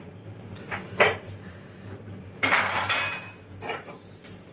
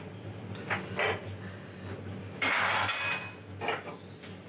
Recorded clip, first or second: second